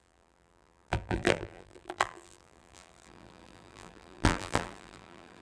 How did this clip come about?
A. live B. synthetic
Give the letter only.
B